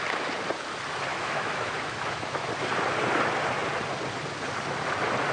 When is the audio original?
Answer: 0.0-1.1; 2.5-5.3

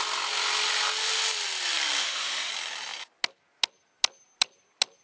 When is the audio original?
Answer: 0.0-2.0; 2.5-5.0

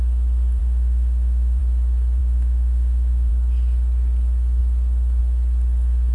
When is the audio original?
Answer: 0.0-0.6; 1.6-2.2; 3.3-6.1

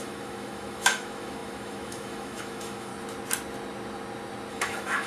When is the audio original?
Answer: 2.9-4.5

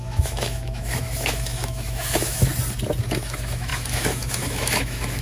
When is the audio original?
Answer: 2.5-3.0

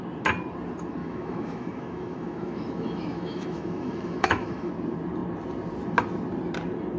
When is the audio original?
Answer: 0.0-1.0; 4.7-7.0